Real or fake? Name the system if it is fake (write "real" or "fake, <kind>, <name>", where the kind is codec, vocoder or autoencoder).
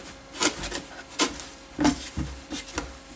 real